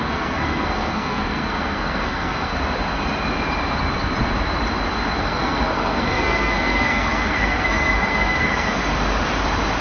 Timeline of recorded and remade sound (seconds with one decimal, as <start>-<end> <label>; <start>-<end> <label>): 0.0-2.5 remade; 2.5-5.2 recorded; 5.2-8.8 remade; 8.8-9.8 recorded